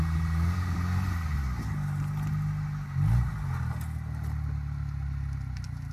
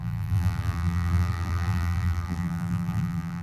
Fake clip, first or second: second